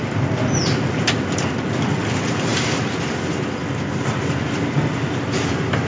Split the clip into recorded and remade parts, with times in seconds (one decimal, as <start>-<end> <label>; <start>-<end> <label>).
0.0-3.6 remade; 3.6-4.4 recorded; 4.4-5.9 remade